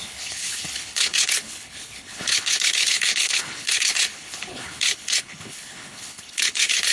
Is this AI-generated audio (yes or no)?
yes